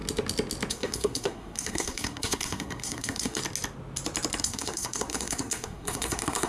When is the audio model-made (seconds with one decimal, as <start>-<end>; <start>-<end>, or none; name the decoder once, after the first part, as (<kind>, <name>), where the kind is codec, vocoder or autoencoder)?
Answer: 0.7-3.4 (codec, SNAC); 4.4-6.5

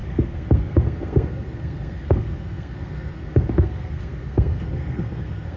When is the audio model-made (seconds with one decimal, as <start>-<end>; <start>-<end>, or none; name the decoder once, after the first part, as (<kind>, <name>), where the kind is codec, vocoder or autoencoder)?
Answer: 0.0-5.6 (codec, SNAC)

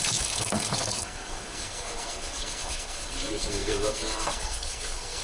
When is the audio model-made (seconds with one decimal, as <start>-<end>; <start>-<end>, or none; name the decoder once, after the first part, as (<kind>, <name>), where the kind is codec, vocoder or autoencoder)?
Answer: 0.0-5.2 (codec, SNAC)

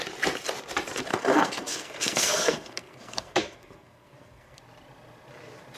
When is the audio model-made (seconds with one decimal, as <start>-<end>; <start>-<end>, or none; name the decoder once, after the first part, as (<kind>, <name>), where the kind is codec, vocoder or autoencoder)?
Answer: 1.1-4.6 (codec, SNAC)